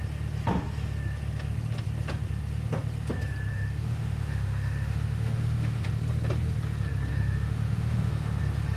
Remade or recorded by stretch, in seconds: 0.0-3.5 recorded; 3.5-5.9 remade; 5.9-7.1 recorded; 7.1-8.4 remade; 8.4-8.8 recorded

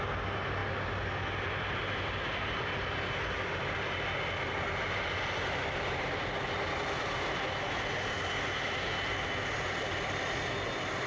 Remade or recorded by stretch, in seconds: 0.0-11.1 recorded

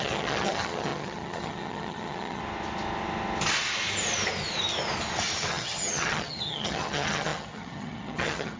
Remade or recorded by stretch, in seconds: 0.0-2.4 remade; 2.4-5.5 recorded; 5.5-8.6 remade

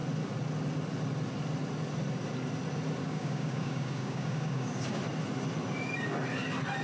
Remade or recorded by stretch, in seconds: 0.0-3.0 recorded; 3.0-5.0 remade; 5.0-6.8 recorded

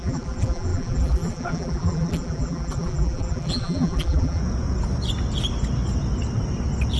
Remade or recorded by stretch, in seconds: 0.0-4.4 remade; 4.4-7.0 recorded